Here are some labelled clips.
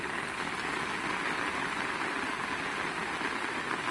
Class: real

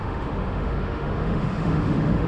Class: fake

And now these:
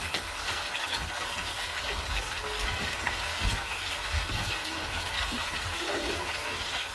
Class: fake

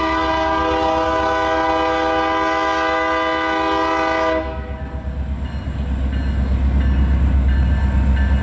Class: real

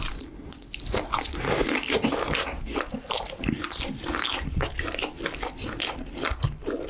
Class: real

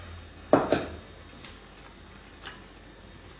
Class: real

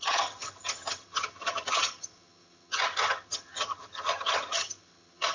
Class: fake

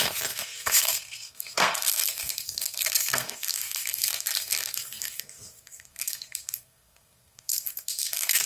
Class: fake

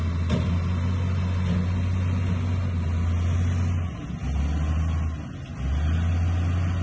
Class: real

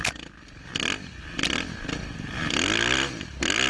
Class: real